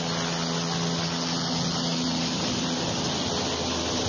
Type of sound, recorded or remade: recorded